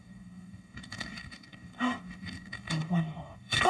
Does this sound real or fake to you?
fake